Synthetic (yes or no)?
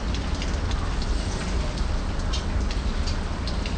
no